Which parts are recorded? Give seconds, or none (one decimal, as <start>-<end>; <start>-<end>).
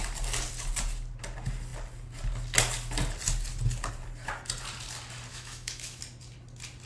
0.0-5.3; 6.0-6.9